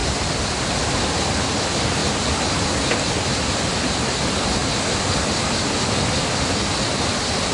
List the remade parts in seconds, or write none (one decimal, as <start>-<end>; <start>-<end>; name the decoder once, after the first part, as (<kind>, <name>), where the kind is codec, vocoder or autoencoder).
none